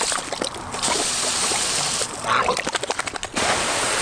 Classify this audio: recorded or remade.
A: recorded